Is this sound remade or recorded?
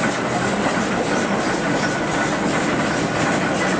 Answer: recorded